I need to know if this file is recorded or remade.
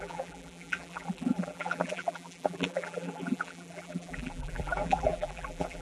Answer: remade